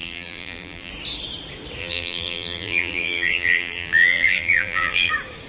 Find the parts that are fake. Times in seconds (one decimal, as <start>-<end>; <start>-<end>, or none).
0.0-0.9; 1.8-5.1